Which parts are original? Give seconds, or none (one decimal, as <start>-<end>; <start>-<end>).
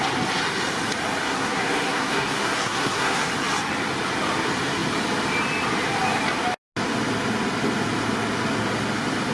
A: 0.0-1.2; 3.3-9.3